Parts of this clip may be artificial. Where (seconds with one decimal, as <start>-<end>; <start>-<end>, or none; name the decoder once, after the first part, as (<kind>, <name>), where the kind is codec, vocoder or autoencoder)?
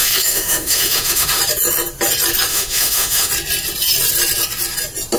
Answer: 0.0-1.4 (autoencoder, DAC-VAE); 2.5-3.3